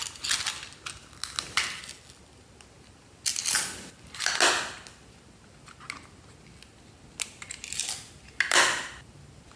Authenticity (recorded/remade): recorded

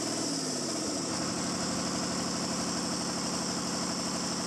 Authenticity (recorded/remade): recorded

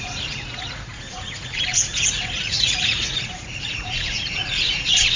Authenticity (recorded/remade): remade